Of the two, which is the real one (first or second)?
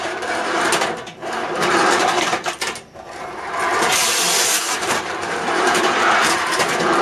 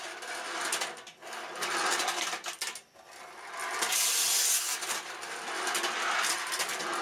second